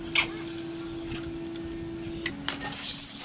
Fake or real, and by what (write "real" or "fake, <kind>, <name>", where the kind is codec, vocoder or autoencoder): real